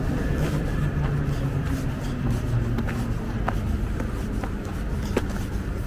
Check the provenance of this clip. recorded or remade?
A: recorded